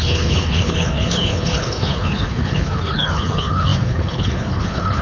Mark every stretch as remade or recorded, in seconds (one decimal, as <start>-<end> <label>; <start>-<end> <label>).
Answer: 0.0-5.0 remade